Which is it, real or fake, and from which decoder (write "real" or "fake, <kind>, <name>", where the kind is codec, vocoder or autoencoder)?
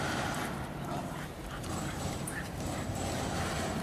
fake, vocoder, BigVGAN v2